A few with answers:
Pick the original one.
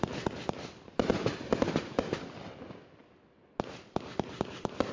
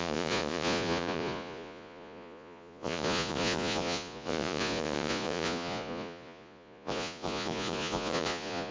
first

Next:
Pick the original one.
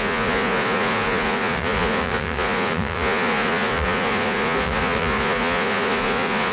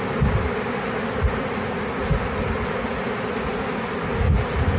second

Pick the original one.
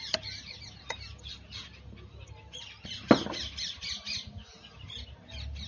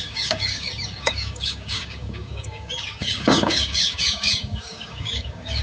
first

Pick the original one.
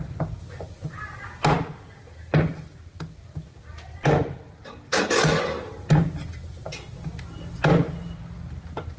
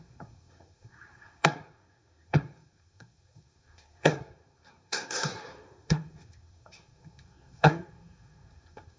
first